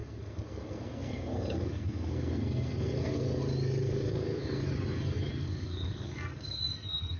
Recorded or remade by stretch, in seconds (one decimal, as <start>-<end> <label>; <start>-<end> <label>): 0.0-3.4 remade; 3.4-3.8 recorded; 3.8-4.6 remade; 4.6-5.3 recorded; 5.3-7.2 remade

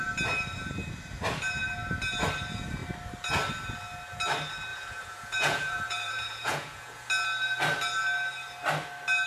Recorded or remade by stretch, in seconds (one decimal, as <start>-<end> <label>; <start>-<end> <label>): 0.0-4.7 recorded; 4.7-7.1 remade; 7.1-9.3 recorded

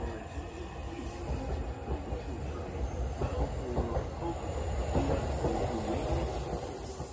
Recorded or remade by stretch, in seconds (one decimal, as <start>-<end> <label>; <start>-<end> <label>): 0.0-7.1 recorded

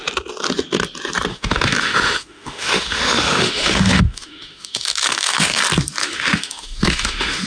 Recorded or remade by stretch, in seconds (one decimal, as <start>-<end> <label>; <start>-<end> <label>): 0.0-1.3 recorded; 1.3-5.6 remade; 5.6-6.0 recorded; 6.0-7.5 remade

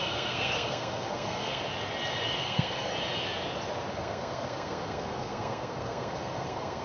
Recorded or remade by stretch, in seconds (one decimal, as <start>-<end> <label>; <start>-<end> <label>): 0.0-1.6 remade; 1.6-2.4 recorded; 2.4-2.9 remade; 2.9-3.9 recorded; 3.9-6.8 remade

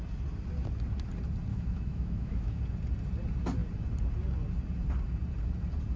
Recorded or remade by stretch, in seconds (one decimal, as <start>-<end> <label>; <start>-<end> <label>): 0.0-1.5 recorded; 1.5-2.6 remade; 2.6-6.0 recorded